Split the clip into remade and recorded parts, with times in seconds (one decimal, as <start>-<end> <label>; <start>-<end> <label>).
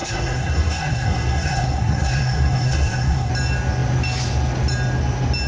0.0-3.3 remade; 3.3-5.5 recorded